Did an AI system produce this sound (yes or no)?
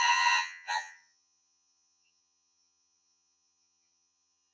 yes